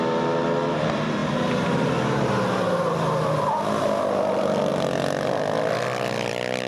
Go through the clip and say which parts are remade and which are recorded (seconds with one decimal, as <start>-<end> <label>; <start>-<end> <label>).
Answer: 0.0-6.7 recorded